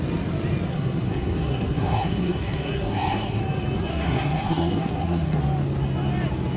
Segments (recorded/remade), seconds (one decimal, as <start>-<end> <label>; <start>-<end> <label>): 0.0-0.7 recorded; 0.7-3.4 remade; 3.4-3.9 recorded; 3.9-5.4 remade; 5.4-6.6 recorded